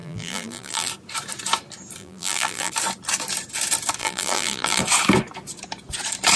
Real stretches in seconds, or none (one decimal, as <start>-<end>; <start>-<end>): 0.9-2.0; 2.7-4.0; 4.8-6.4